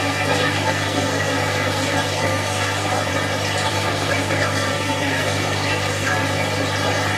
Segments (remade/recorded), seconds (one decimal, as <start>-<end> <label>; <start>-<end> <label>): 0.0-3.1 remade; 3.1-3.7 recorded; 3.7-6.2 remade; 6.2-7.2 recorded